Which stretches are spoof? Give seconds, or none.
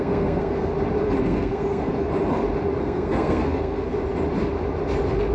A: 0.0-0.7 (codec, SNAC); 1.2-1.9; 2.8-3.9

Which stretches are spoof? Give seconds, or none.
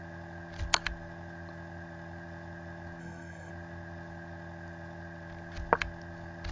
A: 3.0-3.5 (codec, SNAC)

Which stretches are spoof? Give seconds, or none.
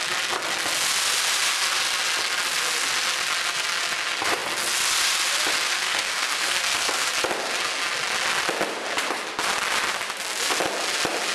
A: 5.8-7.1 (codec, SNAC)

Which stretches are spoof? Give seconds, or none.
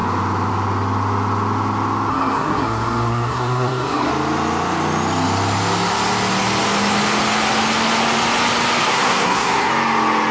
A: 2.1-4.1 (codec, SNAC); 8.9-9.7